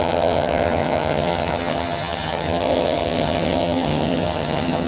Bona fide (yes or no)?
no